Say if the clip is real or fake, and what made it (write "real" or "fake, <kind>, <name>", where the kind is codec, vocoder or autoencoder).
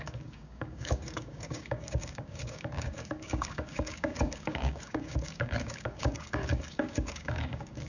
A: fake, codec, DAC